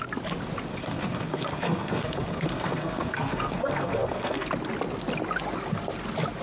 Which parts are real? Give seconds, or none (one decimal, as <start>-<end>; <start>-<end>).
0.0-0.7; 4.5-6.4